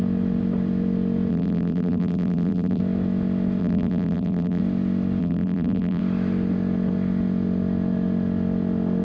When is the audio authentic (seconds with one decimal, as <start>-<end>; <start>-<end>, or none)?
0.0-1.3; 2.8-3.6; 4.6-5.2; 6.0-9.0